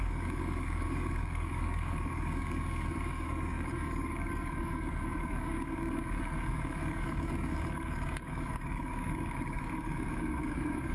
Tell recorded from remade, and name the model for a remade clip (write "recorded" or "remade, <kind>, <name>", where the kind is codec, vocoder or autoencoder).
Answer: remade, codec, DAC